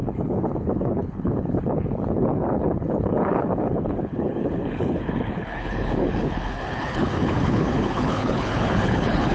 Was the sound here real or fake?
fake